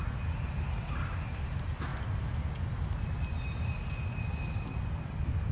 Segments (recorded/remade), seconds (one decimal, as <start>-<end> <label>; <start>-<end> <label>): 0.0-5.5 recorded